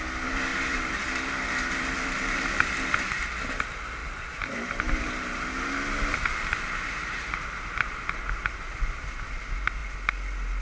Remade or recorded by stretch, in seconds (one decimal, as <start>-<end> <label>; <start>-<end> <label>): 0.0-0.5 recorded; 0.5-3.2 remade; 3.2-4.0 recorded; 4.0-9.2 remade; 9.2-10.6 recorded